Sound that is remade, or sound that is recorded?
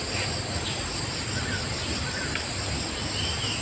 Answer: recorded